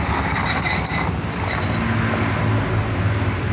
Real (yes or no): yes